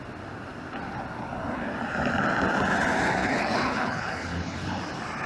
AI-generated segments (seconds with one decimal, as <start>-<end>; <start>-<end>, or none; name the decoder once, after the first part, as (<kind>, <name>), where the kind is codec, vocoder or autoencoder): 3.2-4.8 (codec, HILCodec)